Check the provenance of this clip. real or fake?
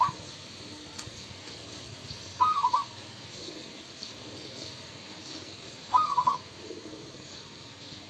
fake